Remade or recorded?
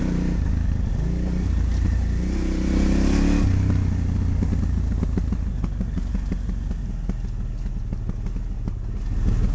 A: recorded